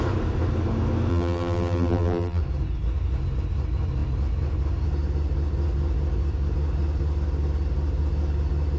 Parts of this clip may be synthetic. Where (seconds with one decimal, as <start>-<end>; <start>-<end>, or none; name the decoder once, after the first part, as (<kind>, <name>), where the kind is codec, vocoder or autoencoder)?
1.1-2.4 (vocoder, BigVGAN v2)